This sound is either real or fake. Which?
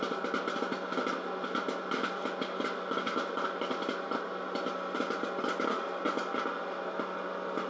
real